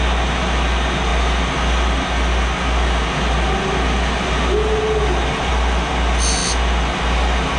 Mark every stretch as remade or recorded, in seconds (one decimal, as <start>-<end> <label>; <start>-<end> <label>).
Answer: 0.0-7.6 recorded